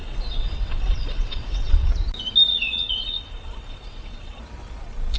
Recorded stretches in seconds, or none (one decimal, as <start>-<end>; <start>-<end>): 1.9-2.5; 4.4-5.2